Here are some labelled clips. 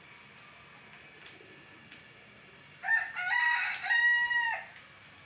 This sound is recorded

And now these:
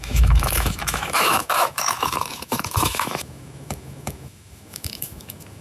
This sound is remade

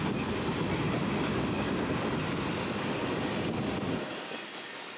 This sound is recorded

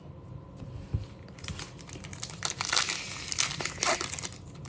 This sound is recorded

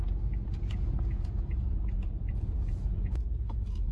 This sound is remade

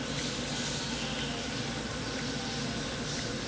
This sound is recorded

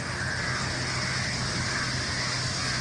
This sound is recorded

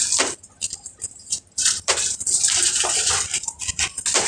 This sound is recorded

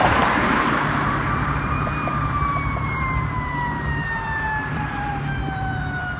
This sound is remade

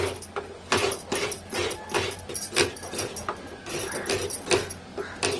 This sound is recorded